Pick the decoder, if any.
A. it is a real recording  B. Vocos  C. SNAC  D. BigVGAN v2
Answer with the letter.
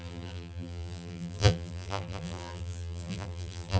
D